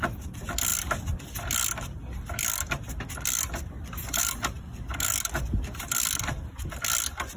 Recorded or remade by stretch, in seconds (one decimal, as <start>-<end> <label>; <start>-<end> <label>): 0.0-7.4 recorded